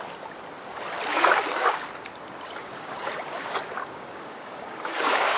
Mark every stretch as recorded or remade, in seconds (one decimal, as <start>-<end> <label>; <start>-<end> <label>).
0.0-1.1 recorded; 1.1-1.9 remade; 1.9-2.6 recorded; 2.6-5.4 remade